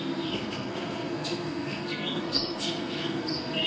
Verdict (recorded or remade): remade